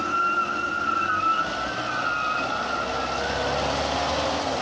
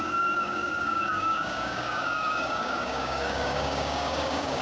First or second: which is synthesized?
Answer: second